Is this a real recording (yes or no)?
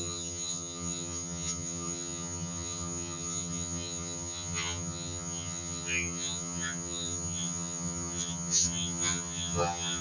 no